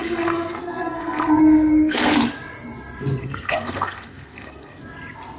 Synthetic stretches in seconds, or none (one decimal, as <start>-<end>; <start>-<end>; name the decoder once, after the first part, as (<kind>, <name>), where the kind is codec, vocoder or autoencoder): 0.0-2.1 (codec, SNAC); 3.2-4.8